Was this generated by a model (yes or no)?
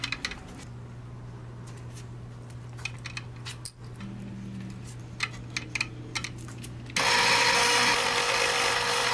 no